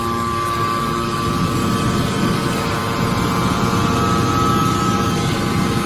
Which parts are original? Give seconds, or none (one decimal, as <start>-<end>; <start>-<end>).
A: 1.6-2.2; 2.8-4.5